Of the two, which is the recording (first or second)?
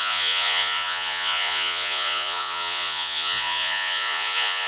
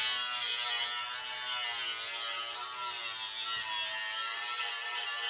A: second